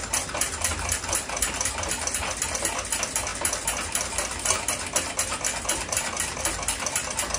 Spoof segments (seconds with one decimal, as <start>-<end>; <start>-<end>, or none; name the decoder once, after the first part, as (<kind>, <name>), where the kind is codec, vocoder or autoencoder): 0.0-1.7 (vocoder, BigVGAN v2); 3.3-6.4